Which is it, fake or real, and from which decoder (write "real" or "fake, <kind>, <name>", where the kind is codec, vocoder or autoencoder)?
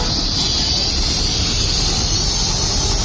real